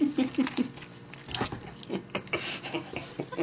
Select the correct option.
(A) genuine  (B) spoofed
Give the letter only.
A